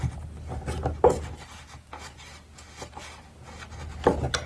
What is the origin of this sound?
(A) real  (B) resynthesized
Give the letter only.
A